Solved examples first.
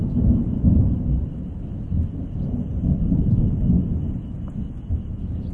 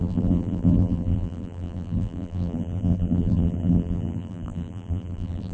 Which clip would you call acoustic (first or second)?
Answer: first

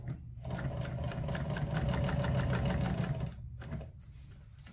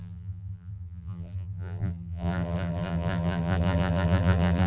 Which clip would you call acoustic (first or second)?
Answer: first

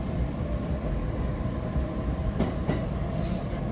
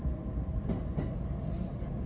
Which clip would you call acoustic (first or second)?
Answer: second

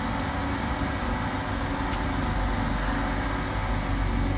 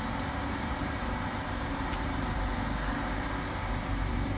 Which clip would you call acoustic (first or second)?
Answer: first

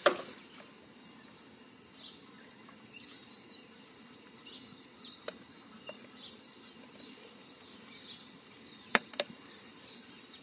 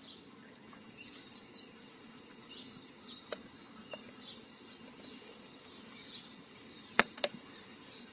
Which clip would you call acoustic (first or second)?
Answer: second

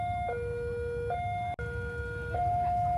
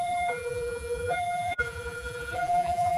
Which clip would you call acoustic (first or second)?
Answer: first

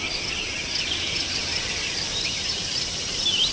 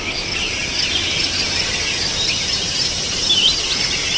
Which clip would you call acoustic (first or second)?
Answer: second